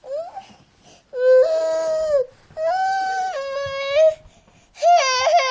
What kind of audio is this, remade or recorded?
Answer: recorded